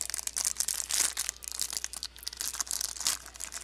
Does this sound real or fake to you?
real